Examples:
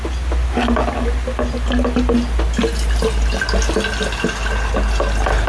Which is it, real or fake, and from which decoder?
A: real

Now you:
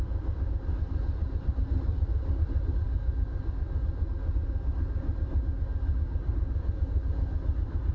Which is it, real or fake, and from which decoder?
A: real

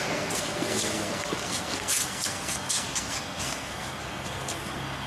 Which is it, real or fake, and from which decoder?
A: fake, codec, SNAC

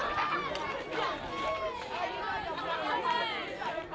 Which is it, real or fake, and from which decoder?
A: real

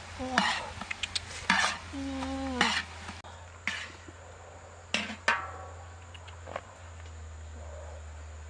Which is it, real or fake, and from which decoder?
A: real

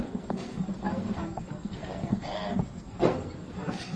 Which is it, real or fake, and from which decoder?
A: fake, codec, SNAC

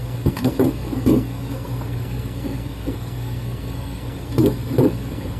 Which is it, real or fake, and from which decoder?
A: fake, codec, SNAC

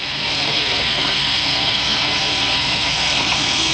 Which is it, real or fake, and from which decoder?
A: fake, codec, SNAC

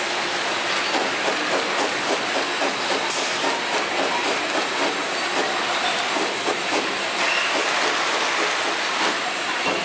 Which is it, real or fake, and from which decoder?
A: real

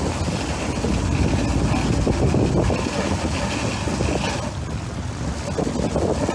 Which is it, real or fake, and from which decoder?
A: real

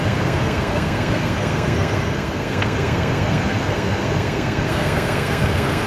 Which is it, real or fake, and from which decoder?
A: fake, codec, SNAC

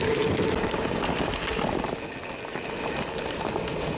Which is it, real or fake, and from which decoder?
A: real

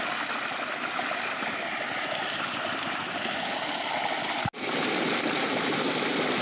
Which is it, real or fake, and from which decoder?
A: real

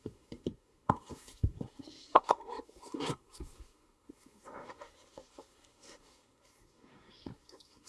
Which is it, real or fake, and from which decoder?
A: fake, codec, SNAC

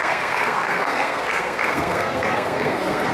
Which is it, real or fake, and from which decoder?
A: fake, codec, SNAC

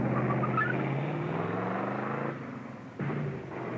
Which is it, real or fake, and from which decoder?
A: real